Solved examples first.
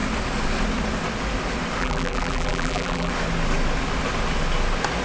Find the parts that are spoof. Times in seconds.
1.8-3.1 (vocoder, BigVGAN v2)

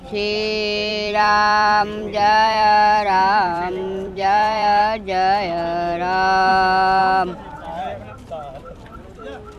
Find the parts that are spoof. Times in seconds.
0.9-4.8 (vocoder, BigVGAN v2)

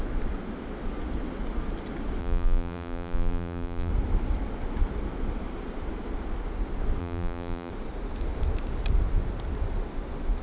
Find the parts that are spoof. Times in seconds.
2.2-3.9 (vocoder, BigVGAN v2); 7.0-7.7

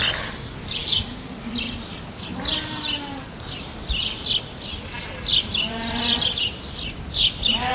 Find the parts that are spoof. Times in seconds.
0.8-1.4 (codec, DAC)

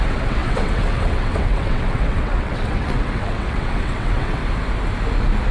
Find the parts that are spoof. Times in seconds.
0.0-4.4 (vocoder, WaveNeXt)

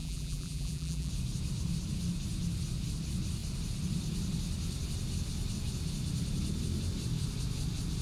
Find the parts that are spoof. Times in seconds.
0.0-1.1 (vocoder, BigVGAN v2)

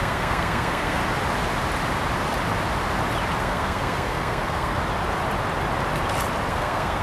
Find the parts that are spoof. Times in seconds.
0.0-1.0 (codec, SNAC); 3.4-4.8; 6.5-7.0

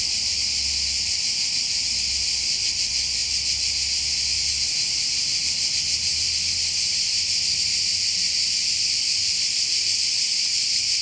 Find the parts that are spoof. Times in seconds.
none